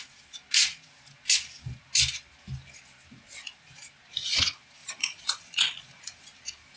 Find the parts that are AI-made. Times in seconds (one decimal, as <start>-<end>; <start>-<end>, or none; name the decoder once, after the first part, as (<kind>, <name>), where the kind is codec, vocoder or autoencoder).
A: 4.8-6.2 (vocoder, Vocos)